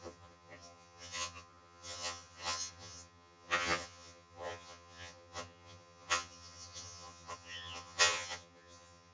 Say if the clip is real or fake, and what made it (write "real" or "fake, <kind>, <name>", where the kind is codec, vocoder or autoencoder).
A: fake, vocoder, HiFi-GAN